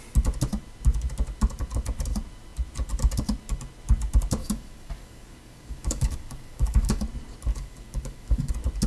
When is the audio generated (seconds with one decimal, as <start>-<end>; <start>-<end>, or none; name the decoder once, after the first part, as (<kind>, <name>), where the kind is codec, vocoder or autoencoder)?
4.4-7.0 (codec, DAC); 7.5-8.5